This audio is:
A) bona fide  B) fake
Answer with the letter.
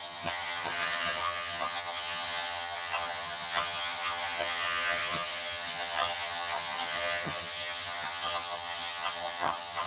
B